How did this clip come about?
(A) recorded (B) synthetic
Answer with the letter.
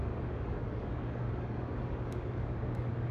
B